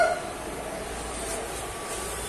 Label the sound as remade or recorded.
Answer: recorded